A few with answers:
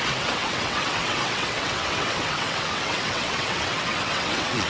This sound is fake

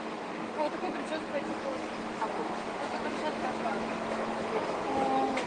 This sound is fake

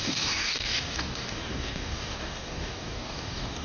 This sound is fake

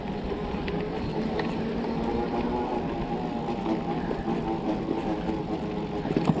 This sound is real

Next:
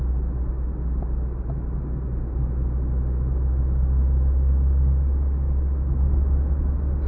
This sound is real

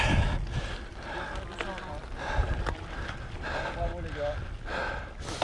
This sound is real